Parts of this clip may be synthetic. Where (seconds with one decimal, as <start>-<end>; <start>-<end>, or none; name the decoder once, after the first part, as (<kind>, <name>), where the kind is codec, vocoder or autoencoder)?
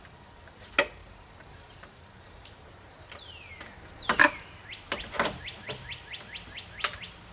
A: 1.0-3.1 (vocoder, BigVGAN v2)